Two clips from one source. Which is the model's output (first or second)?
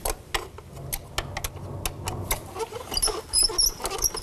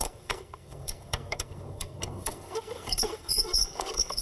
second